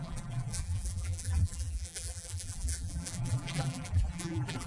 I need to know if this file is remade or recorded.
remade